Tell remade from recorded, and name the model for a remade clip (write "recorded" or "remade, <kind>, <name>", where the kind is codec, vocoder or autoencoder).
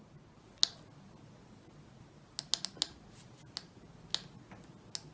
recorded